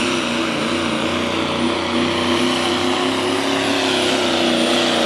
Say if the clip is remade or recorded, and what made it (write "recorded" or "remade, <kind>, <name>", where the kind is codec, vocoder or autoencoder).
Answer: recorded